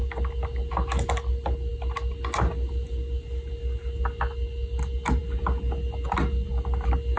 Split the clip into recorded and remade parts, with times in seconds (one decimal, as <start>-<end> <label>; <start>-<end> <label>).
0.0-7.2 recorded